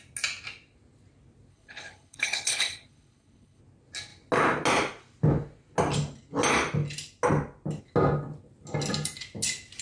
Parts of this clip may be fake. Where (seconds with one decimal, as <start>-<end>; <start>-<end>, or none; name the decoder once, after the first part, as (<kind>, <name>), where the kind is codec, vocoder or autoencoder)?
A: 1.5-3.6 (codec, HILCodec)